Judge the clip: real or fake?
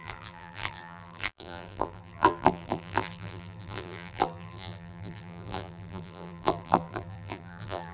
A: fake